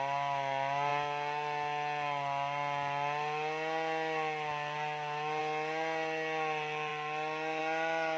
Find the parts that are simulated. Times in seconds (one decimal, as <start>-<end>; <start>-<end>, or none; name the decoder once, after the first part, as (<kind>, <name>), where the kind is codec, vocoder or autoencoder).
none